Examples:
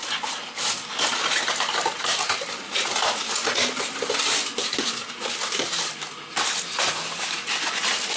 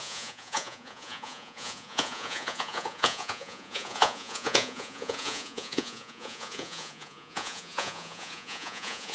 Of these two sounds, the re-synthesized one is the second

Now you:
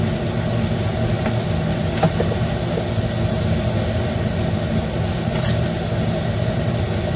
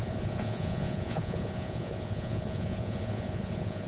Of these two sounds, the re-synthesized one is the second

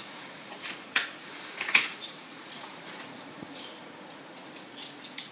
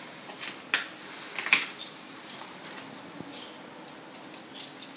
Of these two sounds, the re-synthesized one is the first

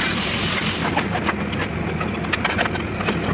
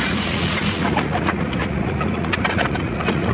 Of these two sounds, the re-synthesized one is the second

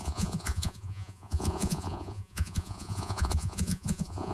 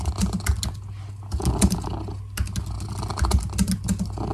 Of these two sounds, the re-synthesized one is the first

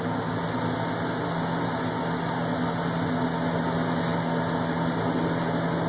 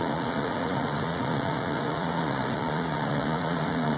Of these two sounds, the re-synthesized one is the second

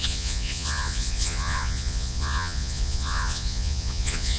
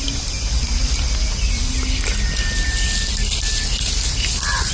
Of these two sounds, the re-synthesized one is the first